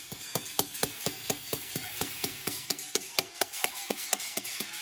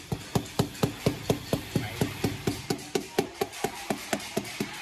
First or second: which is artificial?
first